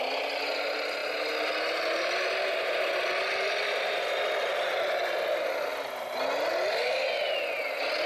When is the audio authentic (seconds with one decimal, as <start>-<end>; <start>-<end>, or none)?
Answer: 0.0-8.1

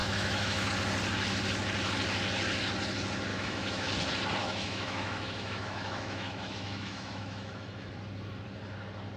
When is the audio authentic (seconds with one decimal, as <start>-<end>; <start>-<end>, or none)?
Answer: 0.7-3.3; 3.9-4.4; 7.9-9.2

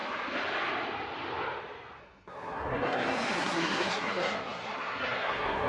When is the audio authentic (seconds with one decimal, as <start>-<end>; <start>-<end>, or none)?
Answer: 0.0-2.0

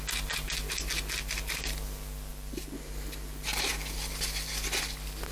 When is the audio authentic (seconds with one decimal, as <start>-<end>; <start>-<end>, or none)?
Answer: 0.0-5.3

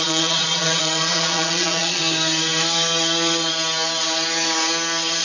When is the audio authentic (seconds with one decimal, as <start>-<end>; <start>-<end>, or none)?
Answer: 2.0-5.2